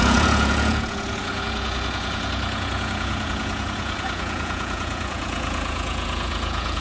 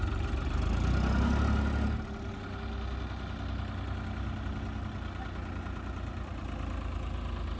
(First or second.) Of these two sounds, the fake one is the first